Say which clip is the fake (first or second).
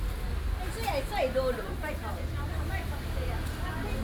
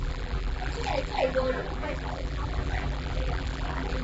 second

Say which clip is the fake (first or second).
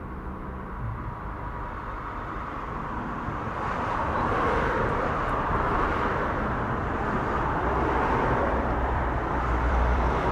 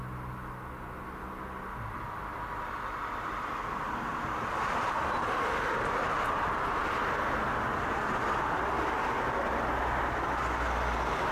first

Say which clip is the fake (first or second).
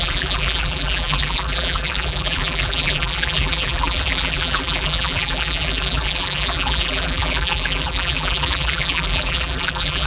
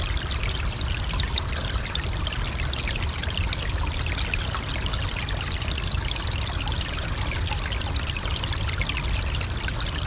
first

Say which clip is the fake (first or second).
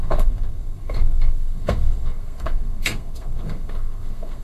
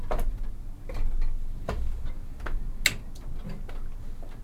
first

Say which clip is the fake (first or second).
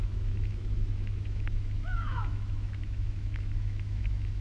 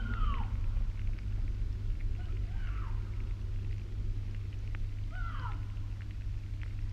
first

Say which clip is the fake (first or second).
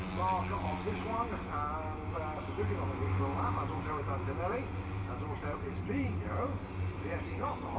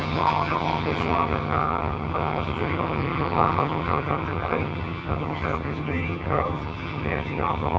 second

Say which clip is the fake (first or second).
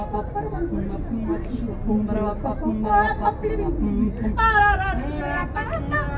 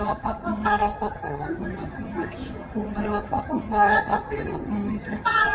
second